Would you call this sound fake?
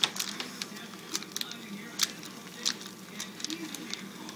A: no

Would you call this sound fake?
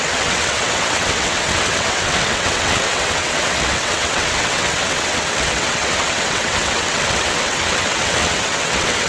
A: yes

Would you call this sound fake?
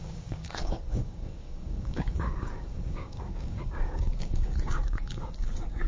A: yes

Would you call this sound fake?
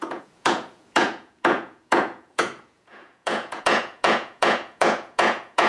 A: yes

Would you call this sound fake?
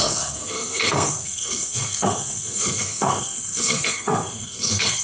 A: yes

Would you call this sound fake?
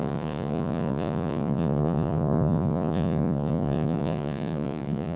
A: yes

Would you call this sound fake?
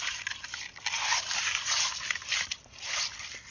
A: no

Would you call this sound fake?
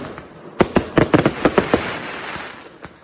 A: no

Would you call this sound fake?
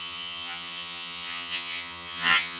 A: yes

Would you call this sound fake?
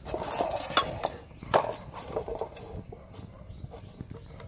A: no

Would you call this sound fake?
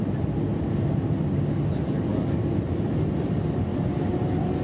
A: no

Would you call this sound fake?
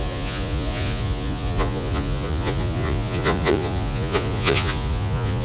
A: yes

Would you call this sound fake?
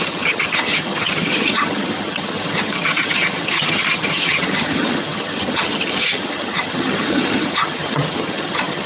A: yes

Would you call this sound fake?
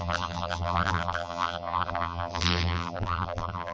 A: yes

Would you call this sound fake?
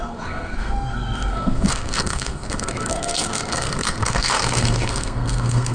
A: yes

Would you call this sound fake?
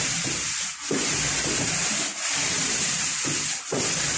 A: yes